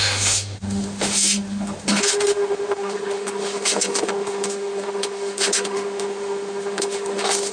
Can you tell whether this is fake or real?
fake